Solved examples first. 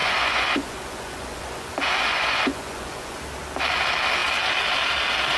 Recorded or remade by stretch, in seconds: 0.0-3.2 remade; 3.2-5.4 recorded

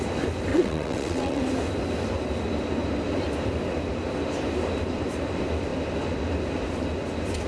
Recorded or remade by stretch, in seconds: 0.0-0.5 recorded; 0.5-1.4 remade; 1.4-7.5 recorded